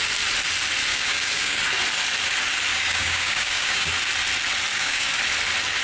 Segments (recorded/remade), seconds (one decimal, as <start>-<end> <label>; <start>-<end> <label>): 0.0-0.9 recorded; 0.9-1.6 remade; 1.6-2.7 recorded; 2.7-3.9 remade; 3.9-4.7 recorded; 4.7-5.2 remade; 5.2-5.8 recorded